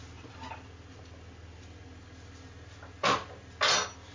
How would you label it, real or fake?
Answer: real